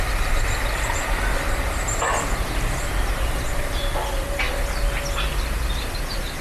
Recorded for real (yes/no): yes